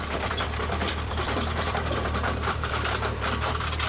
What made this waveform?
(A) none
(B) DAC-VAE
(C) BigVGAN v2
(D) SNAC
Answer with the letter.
C